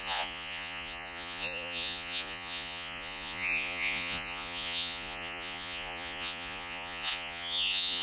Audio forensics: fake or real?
fake